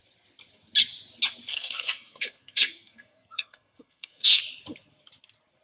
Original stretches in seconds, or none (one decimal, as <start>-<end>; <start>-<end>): 0.0-1.5; 4.4-5.6